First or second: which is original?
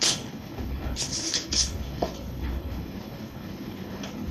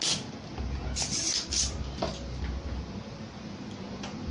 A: second